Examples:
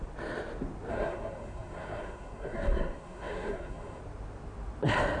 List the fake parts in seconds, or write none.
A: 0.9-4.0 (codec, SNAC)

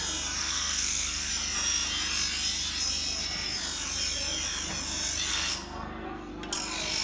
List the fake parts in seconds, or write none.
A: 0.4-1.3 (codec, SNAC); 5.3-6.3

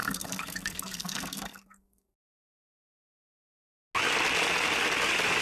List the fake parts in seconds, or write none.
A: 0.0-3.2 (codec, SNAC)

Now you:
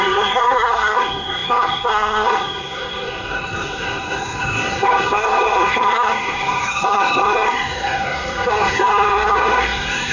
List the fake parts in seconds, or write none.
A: 0.0-10.1 (codec, SNAC)